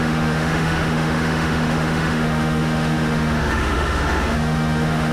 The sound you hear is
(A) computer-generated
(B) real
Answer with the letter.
A